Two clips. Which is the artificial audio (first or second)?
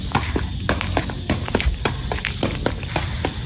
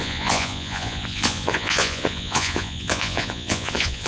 second